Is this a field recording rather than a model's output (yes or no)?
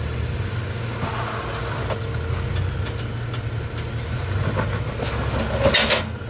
yes